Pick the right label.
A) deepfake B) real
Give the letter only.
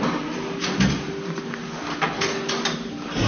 B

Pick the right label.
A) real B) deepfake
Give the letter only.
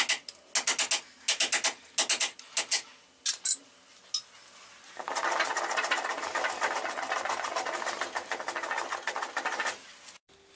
A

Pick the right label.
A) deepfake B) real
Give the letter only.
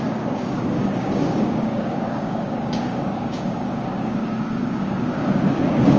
A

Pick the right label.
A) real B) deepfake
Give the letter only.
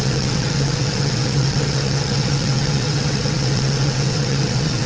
B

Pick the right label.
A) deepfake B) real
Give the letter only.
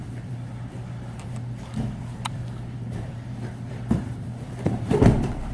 A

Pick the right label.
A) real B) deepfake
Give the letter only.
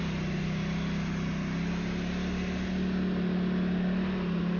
A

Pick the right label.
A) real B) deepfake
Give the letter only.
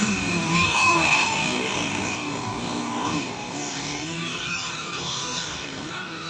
B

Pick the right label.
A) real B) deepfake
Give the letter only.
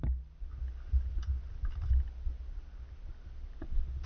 A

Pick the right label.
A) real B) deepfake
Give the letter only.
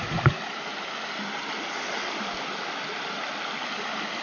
A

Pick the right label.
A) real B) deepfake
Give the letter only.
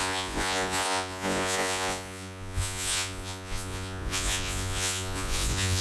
B